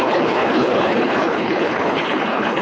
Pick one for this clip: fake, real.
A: fake